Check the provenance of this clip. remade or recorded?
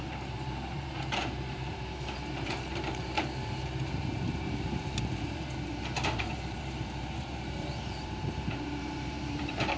remade